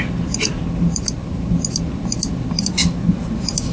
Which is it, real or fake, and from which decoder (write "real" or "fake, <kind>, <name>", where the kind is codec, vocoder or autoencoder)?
real